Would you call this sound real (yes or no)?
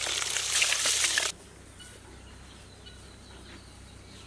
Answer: yes